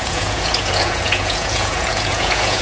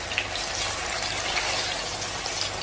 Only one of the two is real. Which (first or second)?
second